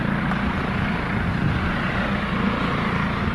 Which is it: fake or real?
real